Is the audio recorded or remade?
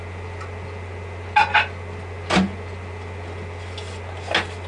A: recorded